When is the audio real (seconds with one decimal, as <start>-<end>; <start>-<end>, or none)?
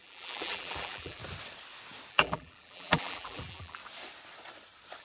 1.2-2.1; 3.8-5.0